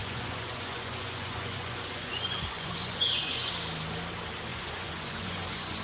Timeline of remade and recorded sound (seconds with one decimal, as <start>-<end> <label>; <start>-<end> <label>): 0.0-3.5 remade; 3.5-4.5 recorded; 4.5-5.8 remade